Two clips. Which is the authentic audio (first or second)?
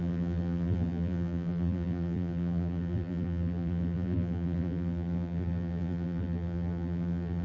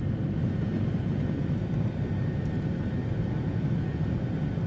second